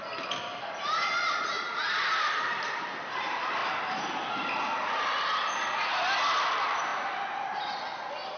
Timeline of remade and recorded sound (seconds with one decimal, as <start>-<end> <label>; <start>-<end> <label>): 0.0-8.4 recorded